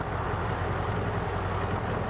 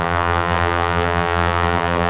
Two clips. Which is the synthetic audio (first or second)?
second